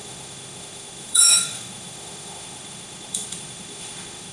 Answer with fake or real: fake